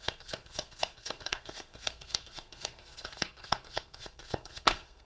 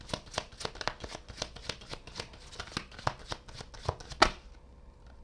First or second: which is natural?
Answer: second